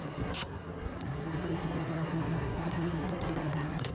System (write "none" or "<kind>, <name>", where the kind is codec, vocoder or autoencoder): codec, SNAC